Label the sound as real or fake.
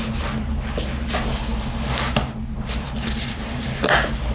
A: real